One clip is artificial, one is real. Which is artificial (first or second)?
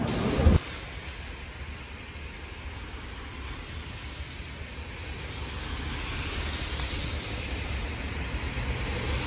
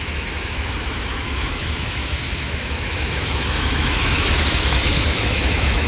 second